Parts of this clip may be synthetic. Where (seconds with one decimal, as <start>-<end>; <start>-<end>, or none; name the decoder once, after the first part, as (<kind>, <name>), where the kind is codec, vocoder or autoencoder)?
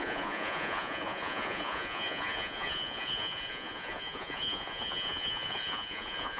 0.0-6.4 (vocoder, Vocos)